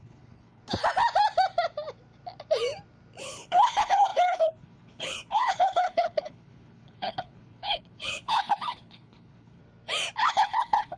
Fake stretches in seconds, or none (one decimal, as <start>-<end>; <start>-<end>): 0.0-0.6; 3.2-9.6; 10.2-11.0